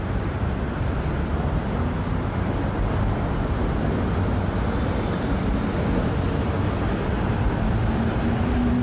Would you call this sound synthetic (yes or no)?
no